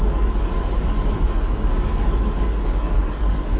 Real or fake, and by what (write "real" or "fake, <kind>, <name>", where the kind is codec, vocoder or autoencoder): fake, codec, DAC